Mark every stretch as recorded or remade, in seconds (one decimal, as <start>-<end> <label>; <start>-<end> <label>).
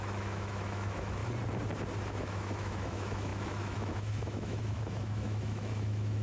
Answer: 0.0-1.2 remade; 1.2-2.1 recorded; 2.1-6.2 remade